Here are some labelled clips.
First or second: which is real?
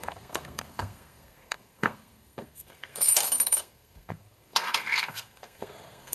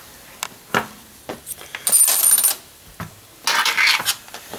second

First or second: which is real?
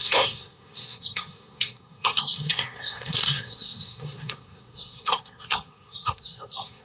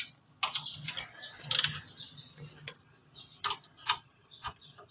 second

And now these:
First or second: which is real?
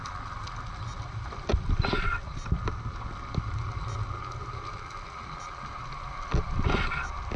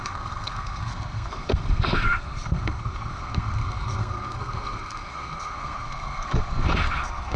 first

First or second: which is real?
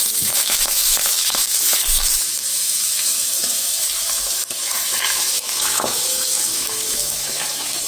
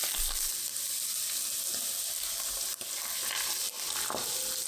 second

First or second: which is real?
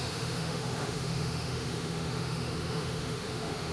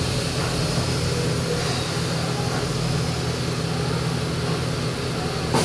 second